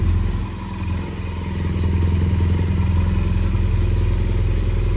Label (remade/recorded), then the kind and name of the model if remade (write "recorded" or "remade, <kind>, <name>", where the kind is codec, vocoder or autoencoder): recorded